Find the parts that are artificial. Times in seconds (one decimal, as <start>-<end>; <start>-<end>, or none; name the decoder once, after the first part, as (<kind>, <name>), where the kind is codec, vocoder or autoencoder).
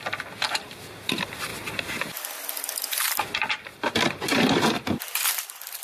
3.7-5.8 (vocoder, BigVGAN v2)